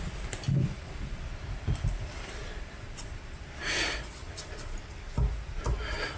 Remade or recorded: recorded